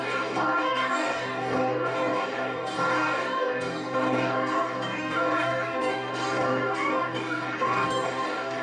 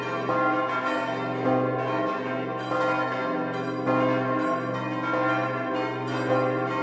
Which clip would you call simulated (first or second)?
first